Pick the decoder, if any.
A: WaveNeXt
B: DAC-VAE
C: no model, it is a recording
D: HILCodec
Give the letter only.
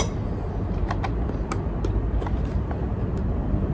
C